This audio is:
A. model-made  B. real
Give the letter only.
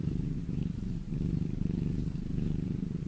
A